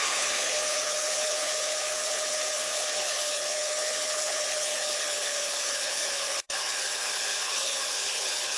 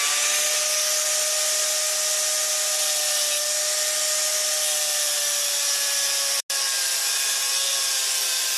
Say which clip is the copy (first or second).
first